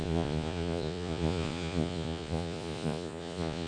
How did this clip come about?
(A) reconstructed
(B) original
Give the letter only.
A